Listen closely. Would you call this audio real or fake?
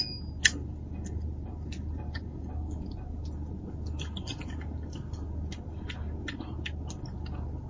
real